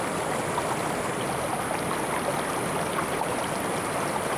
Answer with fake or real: real